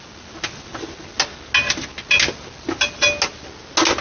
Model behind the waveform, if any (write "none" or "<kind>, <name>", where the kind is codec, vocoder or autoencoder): none